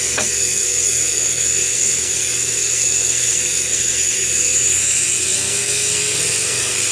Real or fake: fake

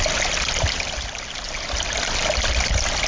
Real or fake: real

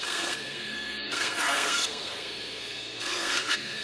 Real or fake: fake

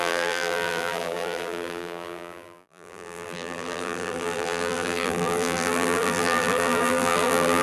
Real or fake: fake